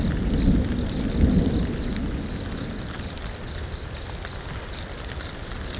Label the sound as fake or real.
real